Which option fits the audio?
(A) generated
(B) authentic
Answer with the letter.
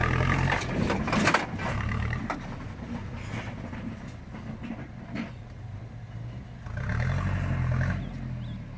B